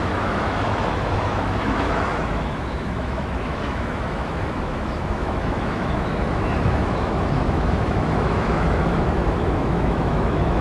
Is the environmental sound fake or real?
fake